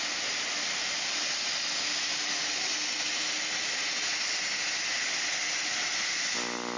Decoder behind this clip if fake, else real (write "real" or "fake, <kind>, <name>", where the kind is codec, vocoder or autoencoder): real